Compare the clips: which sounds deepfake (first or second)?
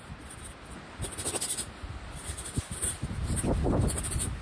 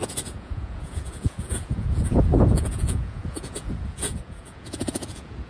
second